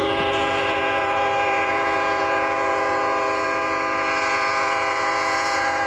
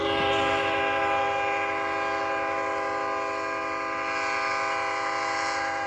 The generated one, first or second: first